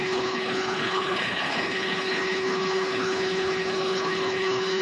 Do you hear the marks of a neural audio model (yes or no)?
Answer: yes